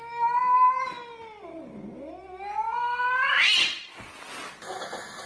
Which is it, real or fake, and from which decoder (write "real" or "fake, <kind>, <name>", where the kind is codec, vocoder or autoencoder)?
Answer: real